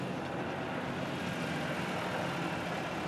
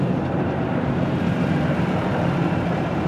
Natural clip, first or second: first